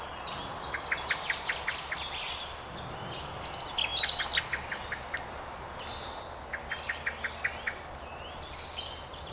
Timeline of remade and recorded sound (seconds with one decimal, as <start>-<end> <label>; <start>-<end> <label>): 0.0-9.3 recorded